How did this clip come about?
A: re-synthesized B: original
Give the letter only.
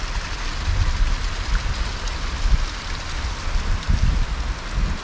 B